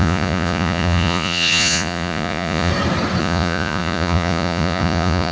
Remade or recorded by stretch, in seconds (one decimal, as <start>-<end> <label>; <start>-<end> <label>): 0.0-2.7 remade; 2.7-3.2 recorded; 3.2-5.3 remade